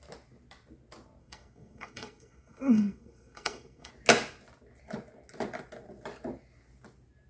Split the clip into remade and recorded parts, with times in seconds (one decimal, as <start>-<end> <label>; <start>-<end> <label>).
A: 0.0-1.2 recorded; 1.2-3.9 remade; 3.9-7.3 recorded